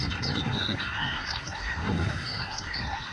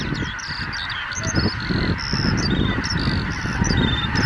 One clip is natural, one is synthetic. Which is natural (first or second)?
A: second